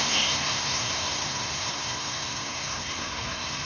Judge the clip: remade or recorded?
remade